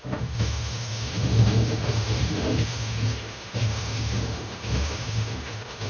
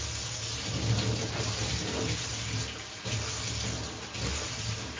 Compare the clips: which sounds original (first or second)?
second